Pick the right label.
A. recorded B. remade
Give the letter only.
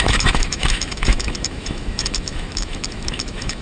B